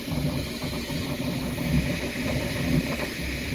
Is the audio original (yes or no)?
yes